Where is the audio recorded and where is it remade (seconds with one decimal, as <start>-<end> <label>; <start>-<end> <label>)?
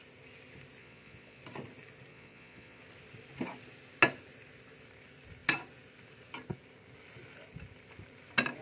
0.0-0.8 recorded; 0.8-1.4 remade; 1.4-2.1 recorded; 2.1-2.8 remade; 2.8-8.6 recorded